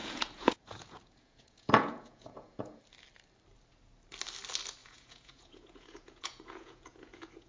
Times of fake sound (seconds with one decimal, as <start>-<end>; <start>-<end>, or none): 0.0-2.8; 4.8-7.5

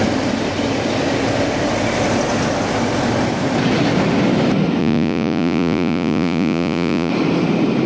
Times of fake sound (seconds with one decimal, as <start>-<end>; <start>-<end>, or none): 4.8-7.1

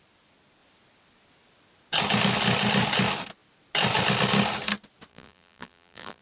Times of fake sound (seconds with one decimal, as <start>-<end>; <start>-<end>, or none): 5.1-6.2

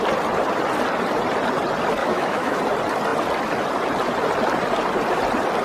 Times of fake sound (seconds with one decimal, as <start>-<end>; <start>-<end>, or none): 2.0-2.6

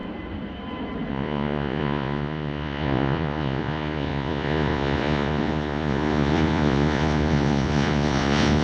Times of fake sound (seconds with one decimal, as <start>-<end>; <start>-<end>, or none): 1.1-8.6

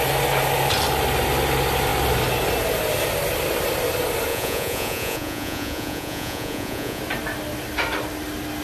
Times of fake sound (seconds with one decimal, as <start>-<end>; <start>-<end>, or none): 4.3-7.0

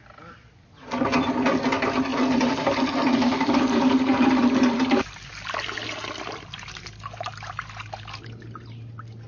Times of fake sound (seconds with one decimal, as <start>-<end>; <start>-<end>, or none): 2.1-5.3